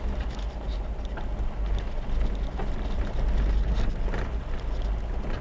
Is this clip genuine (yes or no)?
yes